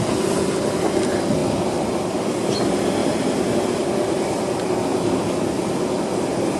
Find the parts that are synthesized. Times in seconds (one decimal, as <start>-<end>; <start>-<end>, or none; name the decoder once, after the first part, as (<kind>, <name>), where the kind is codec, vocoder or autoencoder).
1.4-2.5 (vocoder, BigVGAN v2); 3.0-4.4